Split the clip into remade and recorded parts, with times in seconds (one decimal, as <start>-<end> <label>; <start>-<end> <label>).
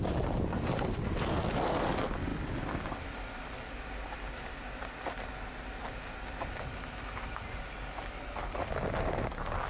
0.0-9.7 recorded